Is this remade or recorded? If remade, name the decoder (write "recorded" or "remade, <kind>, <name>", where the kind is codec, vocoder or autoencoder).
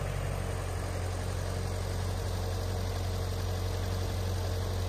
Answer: recorded